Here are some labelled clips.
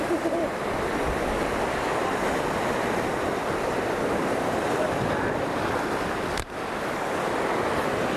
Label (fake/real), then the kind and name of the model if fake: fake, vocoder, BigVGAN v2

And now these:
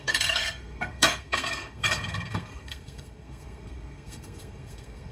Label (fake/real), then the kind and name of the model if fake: fake, codec, SNAC